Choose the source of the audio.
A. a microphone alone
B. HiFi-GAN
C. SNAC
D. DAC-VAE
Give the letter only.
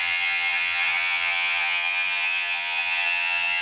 B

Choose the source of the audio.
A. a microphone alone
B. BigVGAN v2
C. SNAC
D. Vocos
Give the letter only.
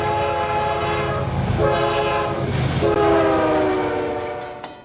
A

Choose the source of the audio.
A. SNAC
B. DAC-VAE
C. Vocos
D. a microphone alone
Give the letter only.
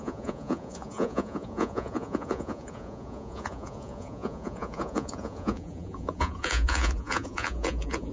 C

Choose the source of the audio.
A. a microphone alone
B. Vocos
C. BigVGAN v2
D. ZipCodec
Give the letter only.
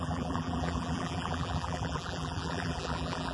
C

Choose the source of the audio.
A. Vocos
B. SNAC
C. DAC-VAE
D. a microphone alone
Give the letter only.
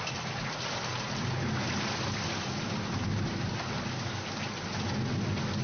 D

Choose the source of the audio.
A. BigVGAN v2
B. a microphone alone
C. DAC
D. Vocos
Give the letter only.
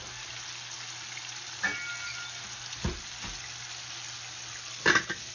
B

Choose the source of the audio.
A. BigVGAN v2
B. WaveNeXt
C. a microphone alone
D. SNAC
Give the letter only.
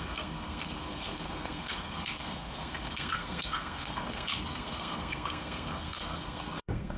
D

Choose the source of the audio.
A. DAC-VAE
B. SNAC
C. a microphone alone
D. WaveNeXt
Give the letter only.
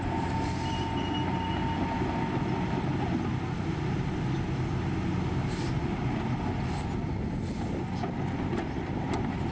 C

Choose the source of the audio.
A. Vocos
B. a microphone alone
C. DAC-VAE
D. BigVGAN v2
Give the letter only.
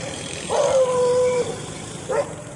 D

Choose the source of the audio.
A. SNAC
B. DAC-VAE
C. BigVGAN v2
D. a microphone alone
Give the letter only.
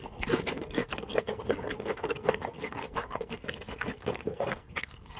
A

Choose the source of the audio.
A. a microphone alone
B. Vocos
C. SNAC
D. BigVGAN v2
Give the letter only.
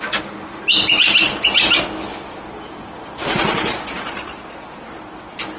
A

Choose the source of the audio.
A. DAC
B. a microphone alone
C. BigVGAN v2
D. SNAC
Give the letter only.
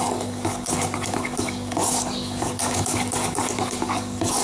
A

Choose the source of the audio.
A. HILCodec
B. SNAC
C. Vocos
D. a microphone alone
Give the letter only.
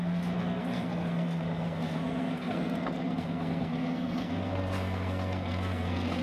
B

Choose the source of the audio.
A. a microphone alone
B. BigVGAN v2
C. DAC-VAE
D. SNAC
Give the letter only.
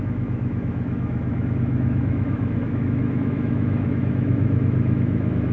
C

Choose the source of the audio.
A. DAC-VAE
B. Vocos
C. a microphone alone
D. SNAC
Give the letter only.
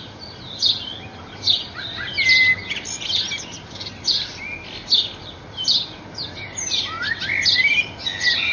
C